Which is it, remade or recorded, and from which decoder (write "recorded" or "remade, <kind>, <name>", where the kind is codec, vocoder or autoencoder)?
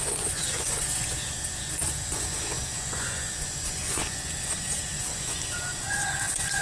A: remade, vocoder, Vocos